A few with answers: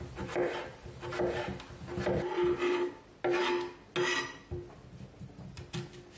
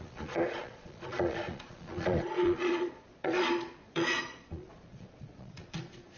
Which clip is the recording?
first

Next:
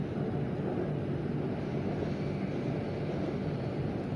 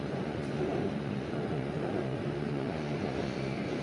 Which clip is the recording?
first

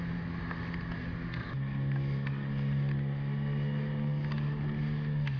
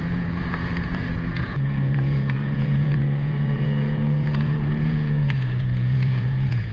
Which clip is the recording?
first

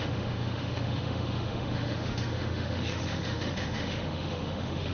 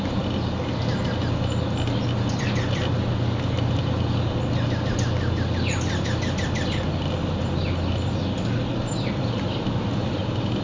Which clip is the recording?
second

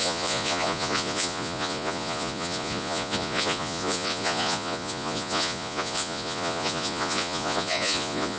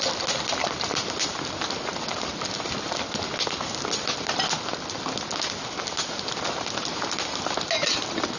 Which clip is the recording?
second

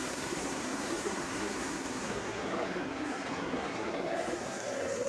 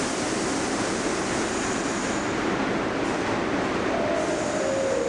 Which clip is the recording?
second